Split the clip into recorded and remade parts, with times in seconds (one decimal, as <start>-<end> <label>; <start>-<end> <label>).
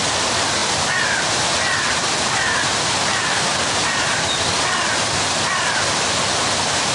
0.0-6.9 recorded